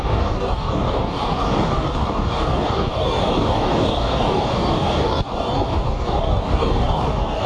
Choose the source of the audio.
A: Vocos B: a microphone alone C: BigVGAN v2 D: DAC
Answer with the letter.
D